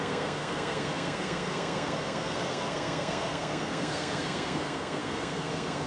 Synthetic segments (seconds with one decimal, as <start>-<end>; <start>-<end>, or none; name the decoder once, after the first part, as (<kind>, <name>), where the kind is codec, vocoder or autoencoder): 0.0-5.9 (codec, SNAC)

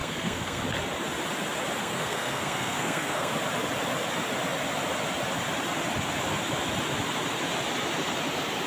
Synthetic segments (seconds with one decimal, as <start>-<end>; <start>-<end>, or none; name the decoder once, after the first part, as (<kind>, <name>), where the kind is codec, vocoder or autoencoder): 0.0-0.6 (codec, SNAC); 1.8-3.3

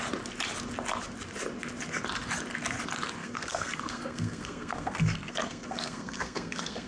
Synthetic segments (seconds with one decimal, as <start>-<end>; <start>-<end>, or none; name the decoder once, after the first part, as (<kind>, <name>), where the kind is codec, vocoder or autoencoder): 3.2-6.9 (codec, SNAC)

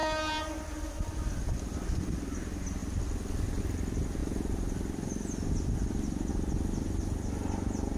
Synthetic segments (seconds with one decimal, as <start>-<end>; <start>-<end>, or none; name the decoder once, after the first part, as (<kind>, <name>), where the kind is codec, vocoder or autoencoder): none

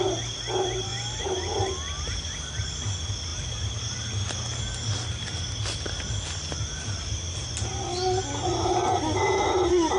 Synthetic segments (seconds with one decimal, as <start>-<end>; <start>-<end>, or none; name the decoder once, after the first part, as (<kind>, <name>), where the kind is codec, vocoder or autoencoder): none

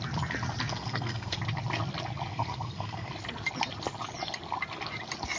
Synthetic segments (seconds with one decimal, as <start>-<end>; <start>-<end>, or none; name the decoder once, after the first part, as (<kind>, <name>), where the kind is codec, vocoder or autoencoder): 0.7-1.4 (codec, SNAC); 2.3-3.1